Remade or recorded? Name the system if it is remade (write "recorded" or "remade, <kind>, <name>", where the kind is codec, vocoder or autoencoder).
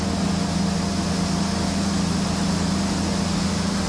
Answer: recorded